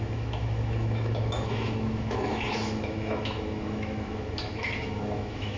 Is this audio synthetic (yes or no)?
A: yes